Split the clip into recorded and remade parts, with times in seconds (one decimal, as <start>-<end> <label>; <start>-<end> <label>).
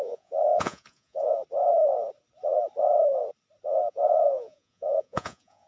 0.0-1.4 remade; 1.4-3.9 recorded; 3.9-5.7 remade